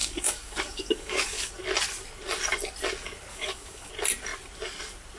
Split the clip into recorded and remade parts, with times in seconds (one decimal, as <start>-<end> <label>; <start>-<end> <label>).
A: 0.0-1.5 remade; 1.5-3.3 recorded; 3.3-3.9 remade; 3.9-5.2 recorded